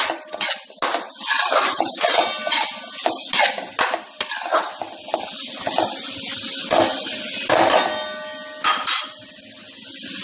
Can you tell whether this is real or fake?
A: real